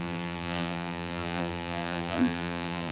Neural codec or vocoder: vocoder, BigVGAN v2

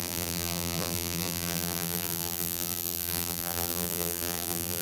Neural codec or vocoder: vocoder, BigVGAN v2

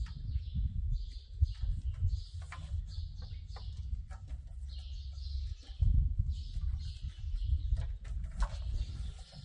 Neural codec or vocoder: none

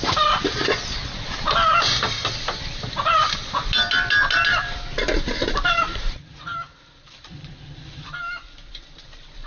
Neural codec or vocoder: vocoder, BigVGAN v2